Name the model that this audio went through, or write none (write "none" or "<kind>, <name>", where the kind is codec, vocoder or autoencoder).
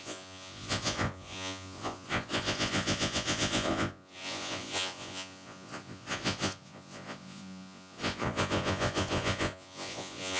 vocoder, Vocos